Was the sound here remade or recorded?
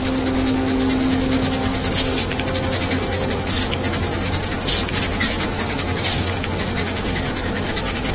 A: remade